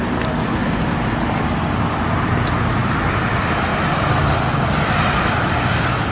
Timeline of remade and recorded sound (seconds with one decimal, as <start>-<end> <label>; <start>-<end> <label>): 0.0-0.6 remade; 0.6-2.1 recorded; 2.1-6.1 remade

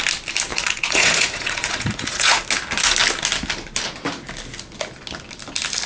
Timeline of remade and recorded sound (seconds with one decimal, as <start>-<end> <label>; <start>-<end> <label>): 0.0-0.5 recorded; 0.5-2.4 remade; 2.4-5.9 recorded

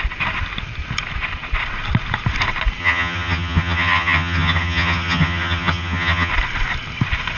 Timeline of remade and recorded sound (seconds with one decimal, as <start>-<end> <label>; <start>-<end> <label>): 0.0-2.8 recorded; 2.8-6.3 remade; 6.3-7.4 recorded

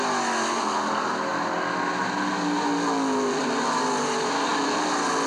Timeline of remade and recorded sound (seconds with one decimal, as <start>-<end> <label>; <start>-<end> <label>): 0.0-5.3 recorded

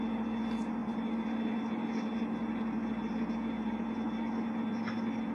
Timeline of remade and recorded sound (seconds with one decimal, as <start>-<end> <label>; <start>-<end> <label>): 0.0-5.3 recorded

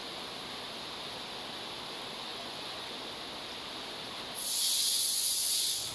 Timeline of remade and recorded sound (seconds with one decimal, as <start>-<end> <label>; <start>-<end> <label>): 0.0-2.3 recorded; 2.3-2.9 remade; 2.9-4.8 recorded; 4.8-5.9 remade